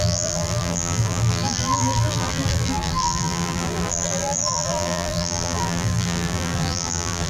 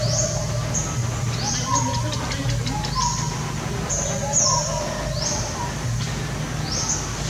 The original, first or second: second